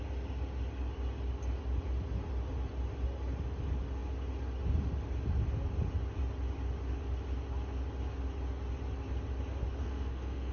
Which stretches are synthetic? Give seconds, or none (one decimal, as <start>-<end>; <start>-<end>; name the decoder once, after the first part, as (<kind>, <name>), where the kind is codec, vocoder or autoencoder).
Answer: 9.8-10.5 (codec, SNAC)